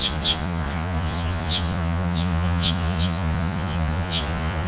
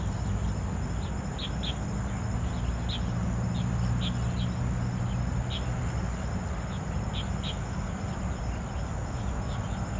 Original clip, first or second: second